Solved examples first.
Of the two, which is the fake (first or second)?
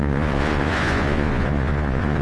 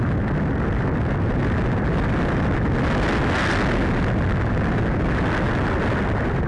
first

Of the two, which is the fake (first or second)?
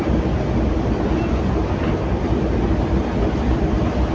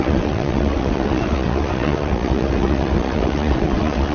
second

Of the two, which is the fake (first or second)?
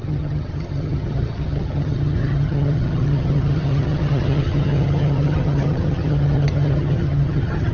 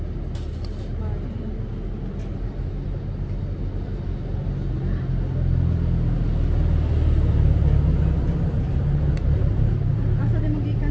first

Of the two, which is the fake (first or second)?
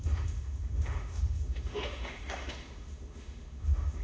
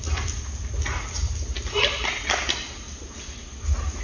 first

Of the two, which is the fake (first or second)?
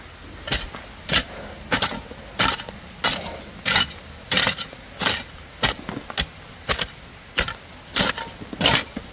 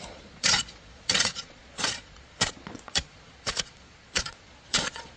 second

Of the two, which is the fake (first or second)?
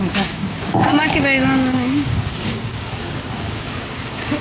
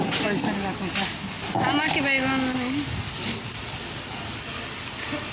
first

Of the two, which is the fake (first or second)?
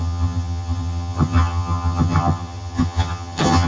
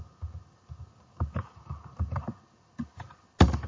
first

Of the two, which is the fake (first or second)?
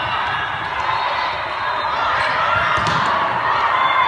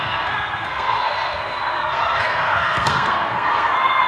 second